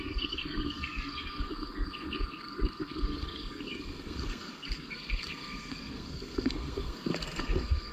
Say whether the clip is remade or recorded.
remade